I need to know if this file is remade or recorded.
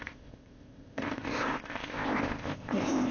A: remade